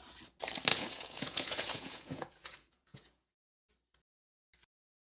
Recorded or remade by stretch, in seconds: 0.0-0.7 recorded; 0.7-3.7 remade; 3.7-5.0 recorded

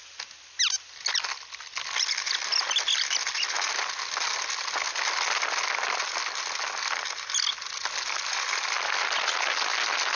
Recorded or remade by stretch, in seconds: 0.0-10.2 recorded

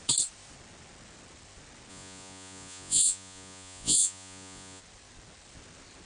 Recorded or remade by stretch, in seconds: 0.0-1.9 recorded; 1.9-4.8 remade; 4.8-6.1 recorded

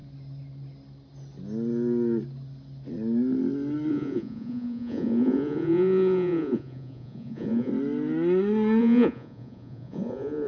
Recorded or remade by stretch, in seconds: 0.0-3.9 recorded; 3.9-7.7 remade; 7.7-8.8 recorded; 8.8-10.5 remade